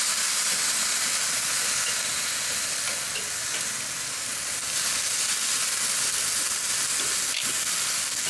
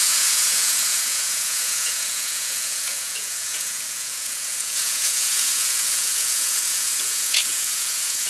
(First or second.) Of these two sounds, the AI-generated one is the second